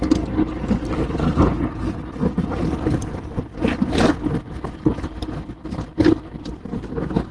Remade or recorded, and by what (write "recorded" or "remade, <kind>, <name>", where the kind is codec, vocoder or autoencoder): recorded